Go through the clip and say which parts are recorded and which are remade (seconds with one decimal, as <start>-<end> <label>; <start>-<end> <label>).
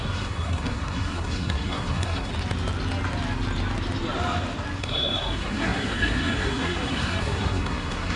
0.0-2.3 remade; 2.3-4.8 recorded; 4.8-8.2 remade